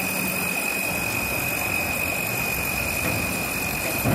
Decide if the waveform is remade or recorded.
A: recorded